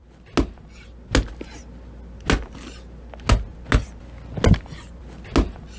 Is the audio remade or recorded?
recorded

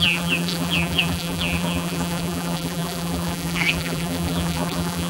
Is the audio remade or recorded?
remade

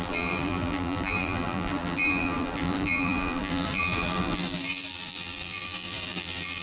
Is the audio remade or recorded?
remade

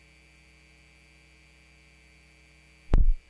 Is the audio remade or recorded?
recorded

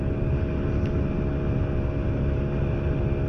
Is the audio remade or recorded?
recorded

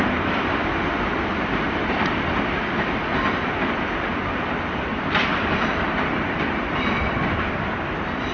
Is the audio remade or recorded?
remade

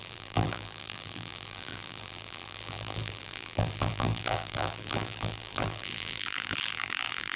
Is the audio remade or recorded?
remade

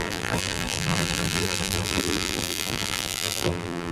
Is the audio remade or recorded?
remade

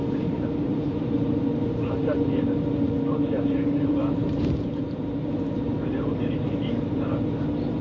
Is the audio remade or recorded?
remade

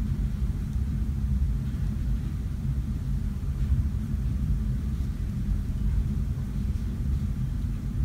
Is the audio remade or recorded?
remade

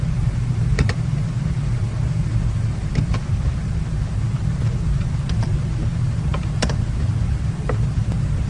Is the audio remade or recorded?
remade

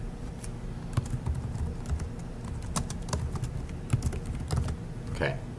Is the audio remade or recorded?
recorded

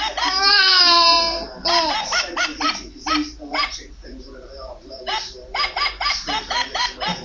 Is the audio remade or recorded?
remade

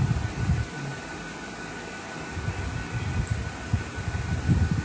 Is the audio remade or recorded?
recorded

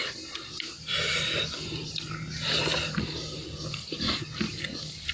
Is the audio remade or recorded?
recorded